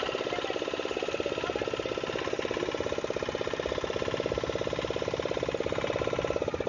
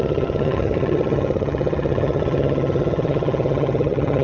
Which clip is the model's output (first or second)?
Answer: second